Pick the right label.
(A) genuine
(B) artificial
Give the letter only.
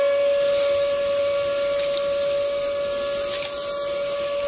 A